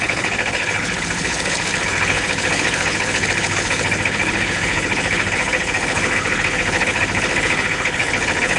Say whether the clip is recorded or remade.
remade